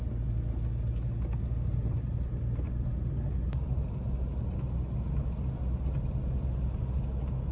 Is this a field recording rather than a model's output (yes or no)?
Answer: yes